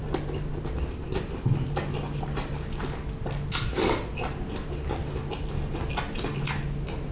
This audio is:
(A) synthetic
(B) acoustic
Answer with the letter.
B